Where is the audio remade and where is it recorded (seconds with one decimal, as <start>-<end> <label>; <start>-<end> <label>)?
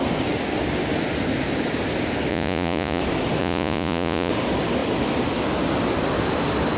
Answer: 0.0-2.3 recorded; 2.3-3.0 remade; 3.0-3.4 recorded; 3.4-4.3 remade; 4.3-6.8 recorded